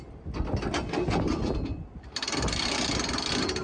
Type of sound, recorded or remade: recorded